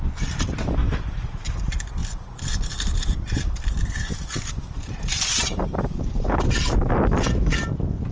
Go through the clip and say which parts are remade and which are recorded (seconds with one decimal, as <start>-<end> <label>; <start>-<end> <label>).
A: 0.0-0.8 recorded; 0.8-1.3 remade; 1.3-2.0 recorded; 2.0-6.6 remade; 6.6-8.1 recorded